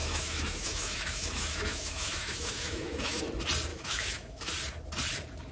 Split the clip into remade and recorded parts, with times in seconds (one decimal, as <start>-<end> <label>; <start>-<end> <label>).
0.0-3.3 remade; 3.3-3.7 recorded; 3.7-4.5 remade; 4.5-5.5 recorded